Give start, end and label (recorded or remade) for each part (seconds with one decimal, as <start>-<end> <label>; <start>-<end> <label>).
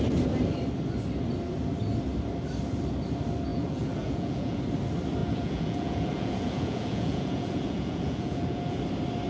0.0-3.5 recorded; 3.5-4.6 remade; 4.6-5.2 recorded; 5.2-8.8 remade; 8.8-9.3 recorded